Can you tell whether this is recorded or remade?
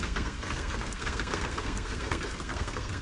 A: remade